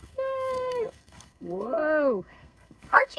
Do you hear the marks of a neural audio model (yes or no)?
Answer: yes